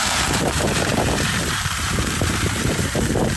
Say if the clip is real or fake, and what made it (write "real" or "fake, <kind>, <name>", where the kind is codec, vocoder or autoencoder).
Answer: fake, vocoder, BigVGAN v2